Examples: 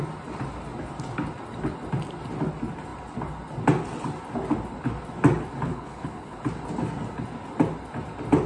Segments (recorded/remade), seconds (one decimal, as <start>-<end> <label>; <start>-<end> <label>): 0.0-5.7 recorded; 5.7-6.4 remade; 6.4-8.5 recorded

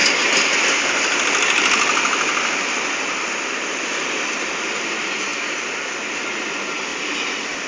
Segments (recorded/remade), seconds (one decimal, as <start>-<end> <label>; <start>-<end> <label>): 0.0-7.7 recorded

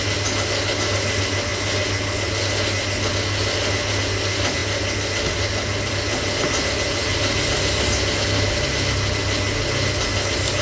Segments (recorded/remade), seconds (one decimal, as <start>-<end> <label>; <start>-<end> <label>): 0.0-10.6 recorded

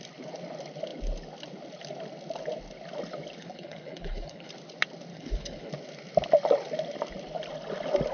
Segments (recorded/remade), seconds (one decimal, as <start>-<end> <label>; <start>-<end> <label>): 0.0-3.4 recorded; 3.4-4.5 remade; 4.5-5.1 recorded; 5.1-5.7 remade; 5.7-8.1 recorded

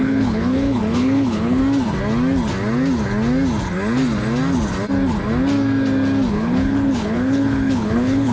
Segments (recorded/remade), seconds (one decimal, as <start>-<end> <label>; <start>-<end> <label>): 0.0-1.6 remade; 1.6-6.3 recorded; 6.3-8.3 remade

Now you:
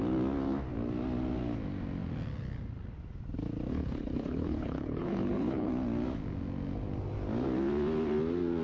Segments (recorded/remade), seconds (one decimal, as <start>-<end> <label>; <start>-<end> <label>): 0.0-3.7 recorded; 3.7-5.7 remade; 5.7-8.6 recorded

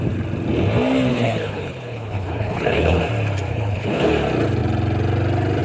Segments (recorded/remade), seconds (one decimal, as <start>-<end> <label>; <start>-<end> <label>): 0.0-1.1 recorded; 1.1-3.0 remade; 3.0-3.5 recorded; 3.5-4.1 remade; 4.1-5.6 recorded

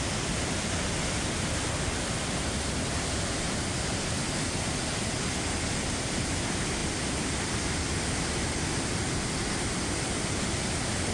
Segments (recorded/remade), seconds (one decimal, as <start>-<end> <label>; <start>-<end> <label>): 0.0-11.1 recorded